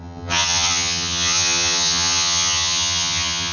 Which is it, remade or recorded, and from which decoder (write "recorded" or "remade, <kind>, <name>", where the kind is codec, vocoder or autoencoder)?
remade, vocoder, HiFi-GAN